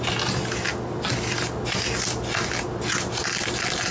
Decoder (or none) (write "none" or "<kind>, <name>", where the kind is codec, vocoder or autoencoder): none